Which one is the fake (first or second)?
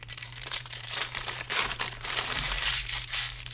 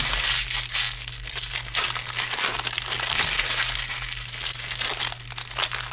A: first